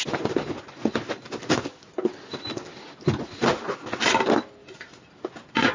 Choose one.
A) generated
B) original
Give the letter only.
B